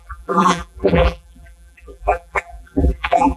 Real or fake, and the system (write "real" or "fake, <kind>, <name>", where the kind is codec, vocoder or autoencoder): fake, vocoder, BigVGAN v2